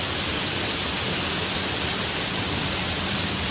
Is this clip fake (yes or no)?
no